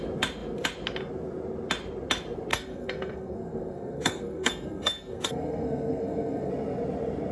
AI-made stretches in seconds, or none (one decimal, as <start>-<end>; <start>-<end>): 2.5-6.5